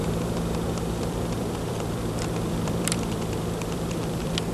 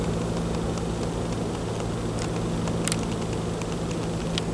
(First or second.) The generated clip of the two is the first